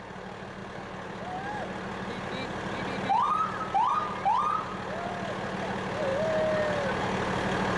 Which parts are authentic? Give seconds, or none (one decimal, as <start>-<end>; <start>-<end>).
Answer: 0.0-7.8